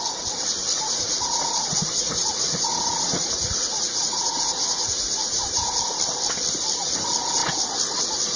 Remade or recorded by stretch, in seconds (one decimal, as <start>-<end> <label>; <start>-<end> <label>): 0.0-0.7 recorded; 0.7-5.7 remade; 5.7-8.4 recorded